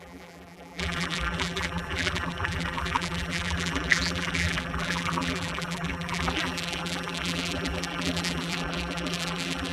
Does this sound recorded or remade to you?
remade